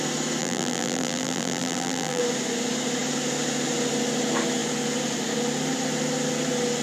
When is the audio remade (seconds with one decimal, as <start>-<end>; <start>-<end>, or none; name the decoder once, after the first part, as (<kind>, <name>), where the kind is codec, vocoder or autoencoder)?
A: 0.4-2.2 (vocoder, BigVGAN v2)